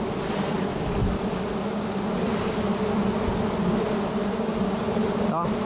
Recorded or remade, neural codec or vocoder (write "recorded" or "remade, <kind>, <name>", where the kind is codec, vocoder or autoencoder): recorded